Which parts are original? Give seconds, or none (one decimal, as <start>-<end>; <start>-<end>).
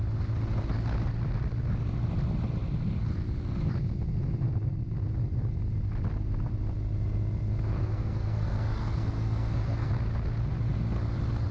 0.0-7.8; 9.9-11.5